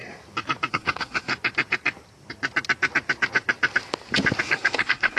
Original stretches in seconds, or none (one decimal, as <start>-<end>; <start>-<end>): 0.0-0.7; 1.3-4.4